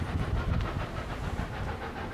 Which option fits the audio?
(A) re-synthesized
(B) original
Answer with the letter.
A